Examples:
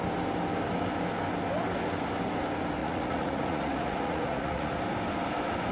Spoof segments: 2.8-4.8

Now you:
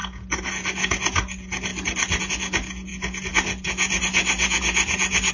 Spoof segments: 0.0-1.7; 2.2-5.3

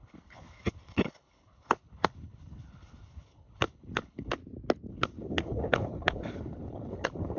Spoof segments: 0.0-4.4; 4.9-7.4

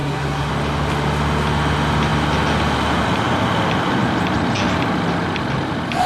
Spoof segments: 0.0-0.5

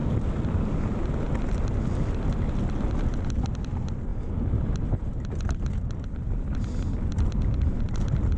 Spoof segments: none